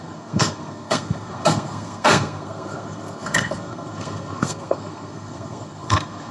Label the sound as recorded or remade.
remade